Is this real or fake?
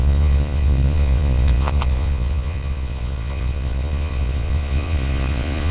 fake